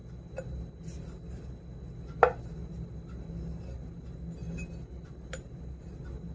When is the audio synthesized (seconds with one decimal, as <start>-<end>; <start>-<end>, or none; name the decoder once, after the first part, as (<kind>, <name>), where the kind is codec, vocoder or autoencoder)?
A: none